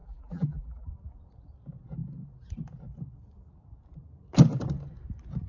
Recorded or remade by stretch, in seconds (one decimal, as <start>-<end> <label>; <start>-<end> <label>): 0.0-0.9 remade; 0.9-5.5 recorded